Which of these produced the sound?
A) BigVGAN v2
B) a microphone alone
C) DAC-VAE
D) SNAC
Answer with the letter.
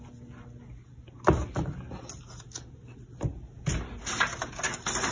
B